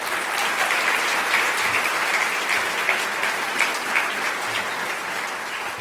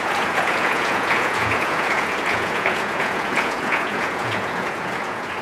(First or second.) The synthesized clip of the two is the second